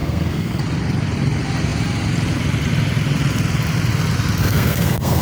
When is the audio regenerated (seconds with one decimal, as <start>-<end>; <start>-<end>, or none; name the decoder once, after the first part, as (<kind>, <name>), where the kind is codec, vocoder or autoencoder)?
0.0-0.6 (codec, SNAC); 4.4-5.2